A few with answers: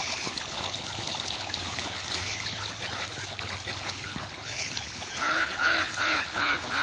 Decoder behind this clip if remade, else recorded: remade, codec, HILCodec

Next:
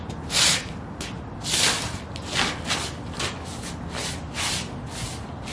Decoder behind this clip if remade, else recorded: recorded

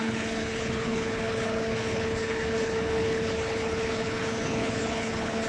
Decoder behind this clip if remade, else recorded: remade, codec, HILCodec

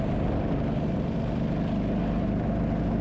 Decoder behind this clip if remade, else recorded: recorded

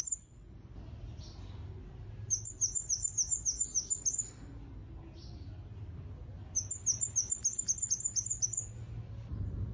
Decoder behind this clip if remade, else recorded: recorded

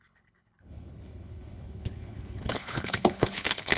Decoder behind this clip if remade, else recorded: remade, codec, HILCodec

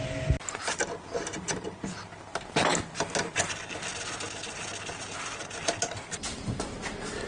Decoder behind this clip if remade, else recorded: recorded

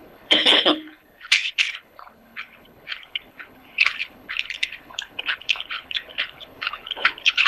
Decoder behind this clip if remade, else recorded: remade, codec, HILCodec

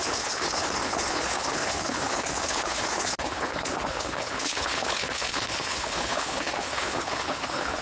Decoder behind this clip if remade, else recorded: remade, codec, HILCodec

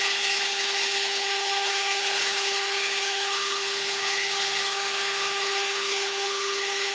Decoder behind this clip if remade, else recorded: remade, codec, HILCodec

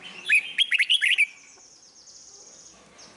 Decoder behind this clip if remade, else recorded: recorded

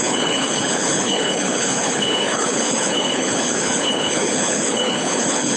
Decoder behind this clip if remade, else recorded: remade, codec, HILCodec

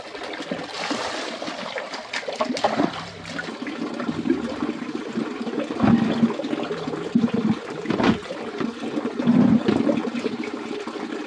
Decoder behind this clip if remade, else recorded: recorded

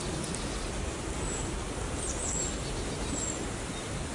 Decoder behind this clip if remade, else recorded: recorded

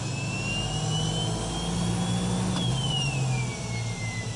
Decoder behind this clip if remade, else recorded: recorded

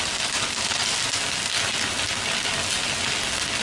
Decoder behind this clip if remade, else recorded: recorded